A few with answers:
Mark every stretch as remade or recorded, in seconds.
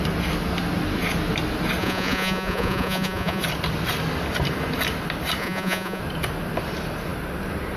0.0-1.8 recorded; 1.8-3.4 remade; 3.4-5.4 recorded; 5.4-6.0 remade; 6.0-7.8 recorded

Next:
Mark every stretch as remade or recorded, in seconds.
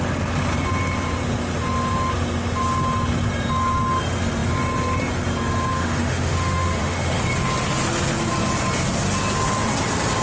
0.0-5.7 recorded; 5.7-7.2 remade; 7.2-10.2 recorded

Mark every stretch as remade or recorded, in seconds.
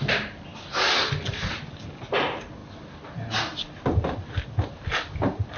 0.0-5.6 recorded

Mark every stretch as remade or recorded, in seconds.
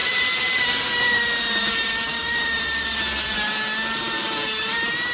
0.0-3.0 remade; 3.0-5.1 recorded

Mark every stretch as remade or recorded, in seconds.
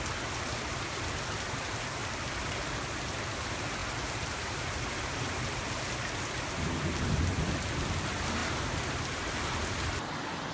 0.0-10.5 recorded